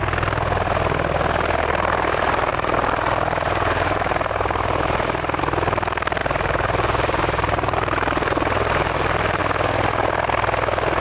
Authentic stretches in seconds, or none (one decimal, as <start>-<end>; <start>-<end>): 0.0-2.5; 5.4-6.2; 9.4-11.0